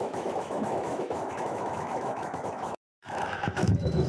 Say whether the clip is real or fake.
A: fake